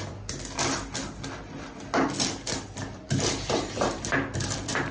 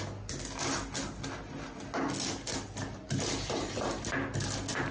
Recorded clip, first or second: second